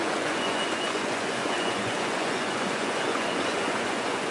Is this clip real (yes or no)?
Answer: no